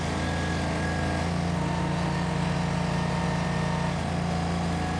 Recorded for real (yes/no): yes